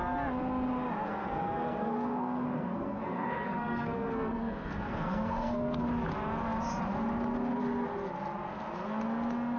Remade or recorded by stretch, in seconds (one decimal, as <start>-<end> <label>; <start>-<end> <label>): 0.0-1.1 recorded; 1.1-5.8 remade; 5.8-9.6 recorded